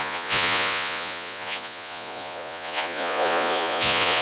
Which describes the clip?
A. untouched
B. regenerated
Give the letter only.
B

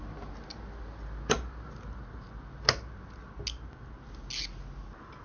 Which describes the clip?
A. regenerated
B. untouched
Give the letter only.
B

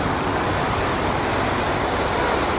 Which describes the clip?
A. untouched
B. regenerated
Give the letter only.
A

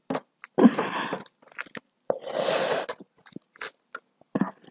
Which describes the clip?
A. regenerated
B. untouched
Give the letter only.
B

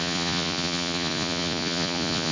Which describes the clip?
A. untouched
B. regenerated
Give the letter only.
B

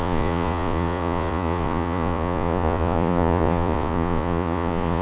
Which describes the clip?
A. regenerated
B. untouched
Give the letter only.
A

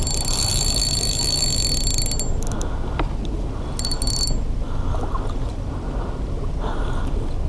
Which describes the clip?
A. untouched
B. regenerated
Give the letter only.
A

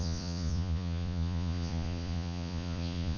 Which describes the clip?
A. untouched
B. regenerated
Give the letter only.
B